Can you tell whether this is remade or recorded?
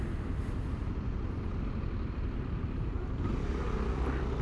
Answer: recorded